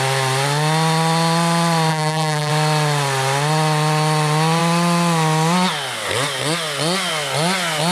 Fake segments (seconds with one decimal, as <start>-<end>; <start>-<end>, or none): 1.9-2.5